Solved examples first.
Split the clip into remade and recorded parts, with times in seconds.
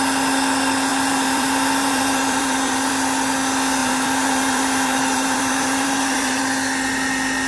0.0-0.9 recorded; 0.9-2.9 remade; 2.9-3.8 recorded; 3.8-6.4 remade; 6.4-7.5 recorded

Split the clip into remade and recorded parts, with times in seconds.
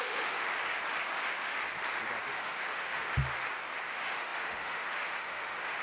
0.0-0.5 remade; 0.5-1.0 recorded; 1.0-1.6 remade; 1.6-2.3 recorded; 2.3-3.2 remade; 3.2-3.9 recorded; 3.9-5.8 remade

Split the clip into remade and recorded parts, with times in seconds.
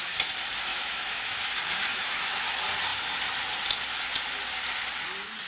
0.0-0.7 recorded; 0.7-1.4 remade; 1.4-1.9 recorded; 1.9-2.5 remade; 2.5-5.5 recorded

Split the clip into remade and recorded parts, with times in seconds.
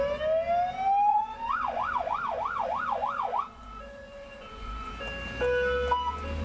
0.0-1.1 recorded; 1.1-4.9 remade; 4.9-6.4 recorded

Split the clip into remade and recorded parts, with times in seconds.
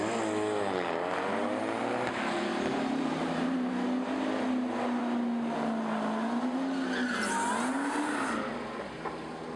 0.0-2.5 recorded; 2.5-3.7 remade; 3.7-9.6 recorded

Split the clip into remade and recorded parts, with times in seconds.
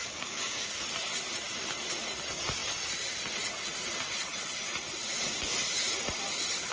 0.0-0.8 remade; 0.8-6.7 recorded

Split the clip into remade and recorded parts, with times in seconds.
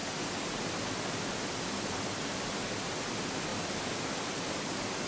0.0-5.1 recorded